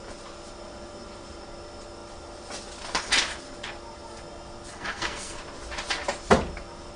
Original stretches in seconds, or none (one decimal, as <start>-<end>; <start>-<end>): 0.0-4.7; 5.4-7.0